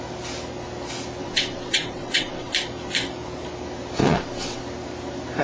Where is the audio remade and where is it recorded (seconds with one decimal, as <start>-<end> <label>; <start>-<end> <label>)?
0.0-1.2 recorded; 1.2-2.5 remade; 2.5-4.0 recorded; 4.0-4.6 remade; 4.6-5.4 recorded